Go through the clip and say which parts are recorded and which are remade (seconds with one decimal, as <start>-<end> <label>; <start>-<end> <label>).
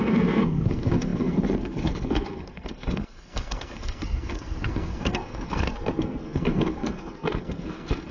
0.0-8.1 remade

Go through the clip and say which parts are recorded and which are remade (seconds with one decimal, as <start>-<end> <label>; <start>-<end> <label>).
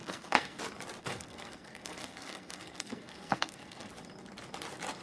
0.0-0.6 remade; 0.6-1.0 recorded; 1.0-3.9 remade; 3.9-5.0 recorded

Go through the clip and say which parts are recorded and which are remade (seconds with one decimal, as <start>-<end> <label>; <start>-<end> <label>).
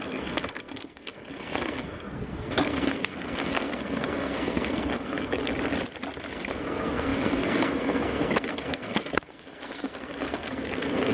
0.0-5.5 remade; 5.5-6.3 recorded; 6.3-11.1 remade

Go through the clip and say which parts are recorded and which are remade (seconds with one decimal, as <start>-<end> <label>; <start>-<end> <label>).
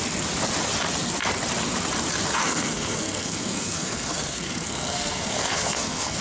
0.0-2.4 recorded; 2.4-6.2 remade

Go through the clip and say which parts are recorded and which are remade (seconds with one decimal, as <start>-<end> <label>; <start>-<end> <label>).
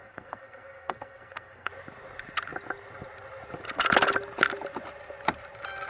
0.0-1.7 remade; 1.7-5.9 recorded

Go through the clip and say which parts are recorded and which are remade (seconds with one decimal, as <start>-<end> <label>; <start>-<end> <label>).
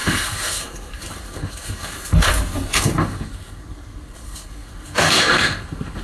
0.0-6.0 remade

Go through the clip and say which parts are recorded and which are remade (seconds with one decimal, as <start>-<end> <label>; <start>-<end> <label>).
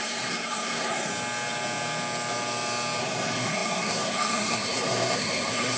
0.0-1.1 remade; 1.1-3.0 recorded; 3.0-5.8 remade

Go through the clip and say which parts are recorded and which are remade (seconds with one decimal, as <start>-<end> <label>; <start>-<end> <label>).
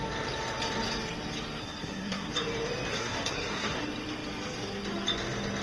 0.0-1.6 recorded; 1.6-2.3 remade; 2.3-2.9 recorded; 2.9-3.8 remade; 3.8-5.6 recorded